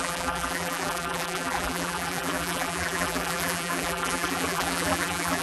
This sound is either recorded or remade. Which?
remade